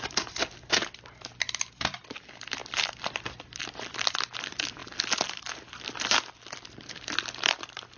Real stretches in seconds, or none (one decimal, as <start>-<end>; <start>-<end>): 0.0-8.0